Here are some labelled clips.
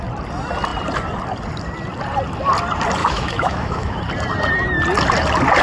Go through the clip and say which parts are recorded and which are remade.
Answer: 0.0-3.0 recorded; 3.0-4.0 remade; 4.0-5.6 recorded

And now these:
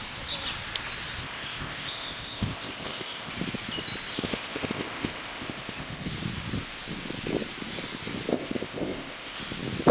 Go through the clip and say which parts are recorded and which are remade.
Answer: 0.0-1.2 recorded; 1.2-3.3 remade; 3.3-4.1 recorded; 4.1-6.1 remade; 6.1-8.3 recorded; 8.3-9.4 remade; 9.4-9.9 recorded

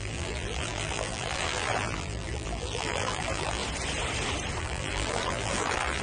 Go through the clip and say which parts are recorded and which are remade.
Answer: 0.0-3.6 remade; 3.6-4.6 recorded; 4.6-6.0 remade

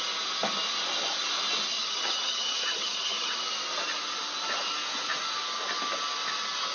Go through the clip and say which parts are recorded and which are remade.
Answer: 0.0-1.7 recorded; 1.7-3.4 remade; 3.4-6.7 recorded

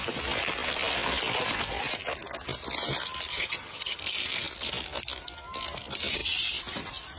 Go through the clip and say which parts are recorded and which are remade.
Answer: 0.0-3.3 recorded; 3.3-4.0 remade; 4.0-7.2 recorded

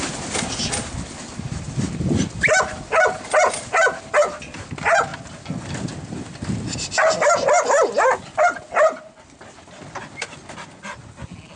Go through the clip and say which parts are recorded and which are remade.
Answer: 0.0-11.6 recorded

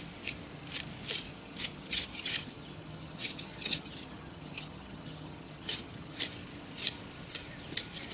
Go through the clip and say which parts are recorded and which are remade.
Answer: 0.0-1.3 recorded; 1.3-6.2 remade; 6.2-8.1 recorded

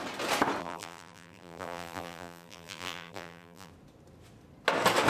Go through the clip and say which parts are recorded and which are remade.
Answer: 0.0-0.6 recorded; 0.6-3.7 remade; 3.7-5.1 recorded